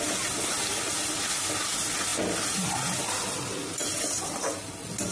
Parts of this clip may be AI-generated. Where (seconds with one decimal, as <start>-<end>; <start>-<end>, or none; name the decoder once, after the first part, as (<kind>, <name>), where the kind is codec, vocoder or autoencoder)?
none